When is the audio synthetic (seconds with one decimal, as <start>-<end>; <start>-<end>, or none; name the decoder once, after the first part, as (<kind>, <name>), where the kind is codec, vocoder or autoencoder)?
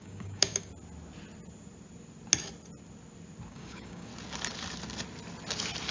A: 0.0-0.7 (codec, DAC); 3.5-4.1